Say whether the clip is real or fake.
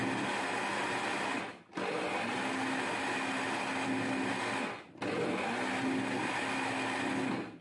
real